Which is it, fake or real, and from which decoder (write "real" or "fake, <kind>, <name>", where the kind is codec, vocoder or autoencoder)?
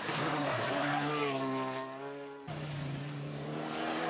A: fake, codec, DAC